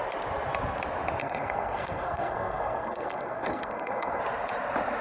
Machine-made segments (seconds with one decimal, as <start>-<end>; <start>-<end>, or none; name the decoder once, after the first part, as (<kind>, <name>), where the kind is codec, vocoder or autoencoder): 1.2-4.2 (codec, SNAC)